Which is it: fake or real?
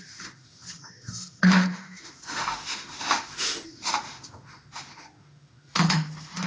fake